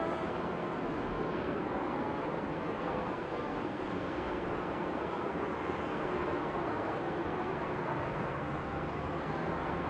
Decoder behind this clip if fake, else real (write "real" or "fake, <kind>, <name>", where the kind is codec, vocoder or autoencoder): fake, codec, SNAC